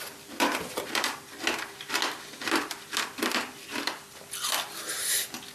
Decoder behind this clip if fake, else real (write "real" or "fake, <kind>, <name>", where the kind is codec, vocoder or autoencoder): real